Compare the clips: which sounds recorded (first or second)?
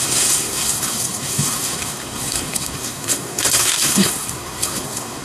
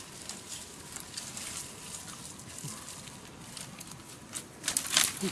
second